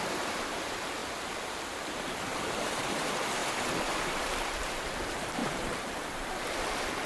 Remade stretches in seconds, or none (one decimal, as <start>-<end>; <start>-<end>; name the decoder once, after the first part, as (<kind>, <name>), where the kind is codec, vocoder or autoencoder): 0.0-1.0 (vocoder, BigVGAN v2); 1.8-3.4; 4.2-7.1